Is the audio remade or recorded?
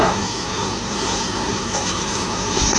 remade